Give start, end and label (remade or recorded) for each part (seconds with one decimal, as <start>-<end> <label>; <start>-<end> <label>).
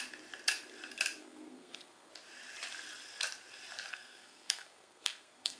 0.0-1.2 recorded; 1.2-2.1 remade; 2.1-3.9 recorded; 3.9-5.6 remade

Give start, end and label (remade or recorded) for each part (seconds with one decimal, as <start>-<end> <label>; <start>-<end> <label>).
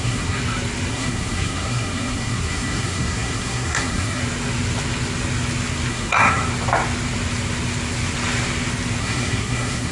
0.0-0.4 remade; 0.4-0.9 recorded; 0.9-4.2 remade; 4.2-5.9 recorded; 5.9-6.4 remade; 6.4-9.0 recorded; 9.0-9.9 remade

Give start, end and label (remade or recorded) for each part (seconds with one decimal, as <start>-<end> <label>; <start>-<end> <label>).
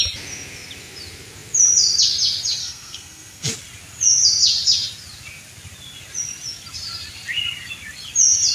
0.0-2.6 recorded; 2.6-3.5 remade; 3.5-8.5 recorded